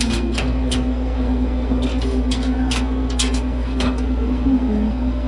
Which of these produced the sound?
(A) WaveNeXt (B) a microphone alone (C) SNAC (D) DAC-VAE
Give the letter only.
C